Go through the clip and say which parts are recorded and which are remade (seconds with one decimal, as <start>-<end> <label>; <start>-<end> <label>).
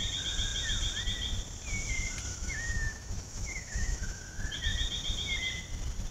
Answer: 0.0-2.3 recorded; 2.3-4.2 remade; 4.2-6.1 recorded